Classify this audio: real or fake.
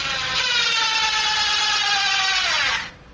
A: real